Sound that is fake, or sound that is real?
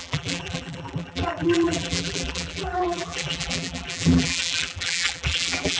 fake